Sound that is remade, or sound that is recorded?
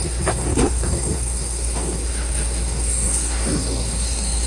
remade